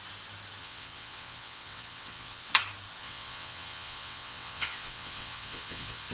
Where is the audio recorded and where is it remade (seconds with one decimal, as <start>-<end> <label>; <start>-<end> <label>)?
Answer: 0.0-0.6 recorded; 0.6-2.5 remade; 2.5-3.0 recorded; 3.0-6.1 remade